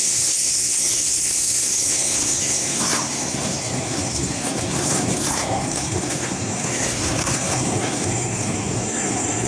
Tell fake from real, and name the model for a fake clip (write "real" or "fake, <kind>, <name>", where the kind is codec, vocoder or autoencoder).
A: fake, codec, SNAC